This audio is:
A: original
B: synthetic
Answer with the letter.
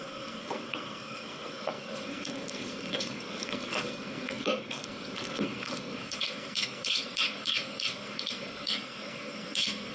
B